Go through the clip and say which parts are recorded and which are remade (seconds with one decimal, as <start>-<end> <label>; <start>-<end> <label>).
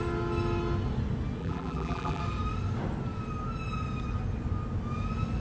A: 0.0-1.4 recorded; 1.4-2.2 remade; 2.2-5.4 recorded